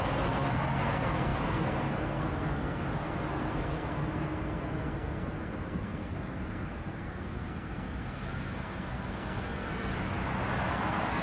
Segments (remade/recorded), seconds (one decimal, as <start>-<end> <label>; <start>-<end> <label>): 0.0-9.9 remade; 9.9-10.7 recorded; 10.7-11.2 remade